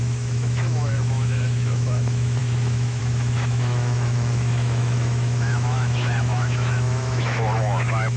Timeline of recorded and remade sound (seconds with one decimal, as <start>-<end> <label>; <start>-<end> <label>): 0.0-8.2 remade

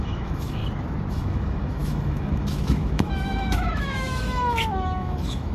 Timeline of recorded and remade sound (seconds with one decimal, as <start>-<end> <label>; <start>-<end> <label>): 0.0-0.6 remade; 0.6-1.1 recorded; 1.1-5.5 remade

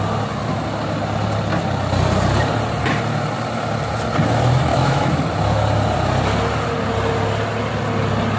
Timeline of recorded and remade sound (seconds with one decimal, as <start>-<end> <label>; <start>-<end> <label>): 0.0-4.7 recorded; 4.7-5.2 remade; 5.2-8.4 recorded